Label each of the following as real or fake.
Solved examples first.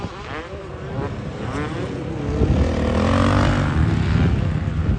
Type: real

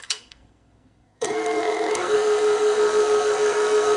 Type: fake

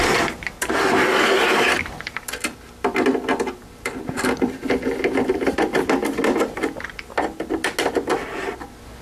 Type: real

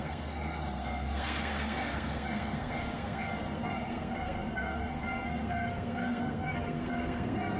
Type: fake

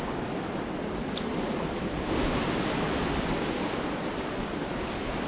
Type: real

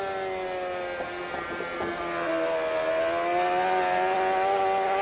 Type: real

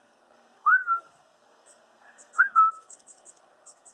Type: fake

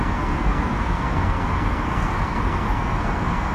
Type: fake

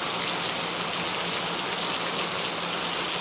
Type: real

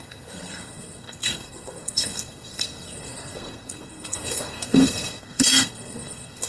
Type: fake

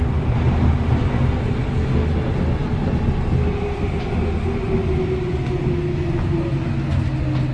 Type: real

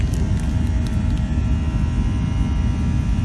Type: real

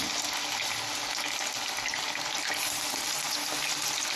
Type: real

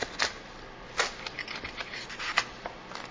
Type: real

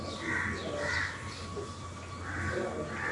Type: real